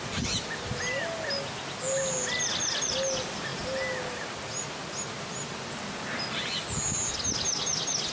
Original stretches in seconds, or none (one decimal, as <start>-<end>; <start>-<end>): 0.0-8.1